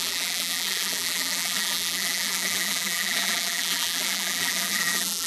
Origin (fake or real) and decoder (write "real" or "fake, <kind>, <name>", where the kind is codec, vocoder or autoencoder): fake, vocoder, BigVGAN v2